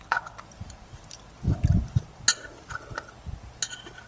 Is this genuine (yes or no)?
yes